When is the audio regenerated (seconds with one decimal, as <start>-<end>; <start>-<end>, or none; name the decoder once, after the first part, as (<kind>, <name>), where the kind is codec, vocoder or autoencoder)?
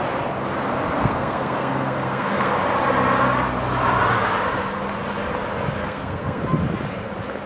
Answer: 1.0-2.6 (codec, SNAC); 5.8-6.4